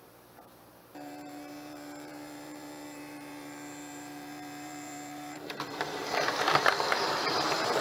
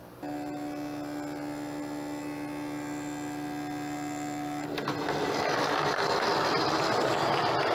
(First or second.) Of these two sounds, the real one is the second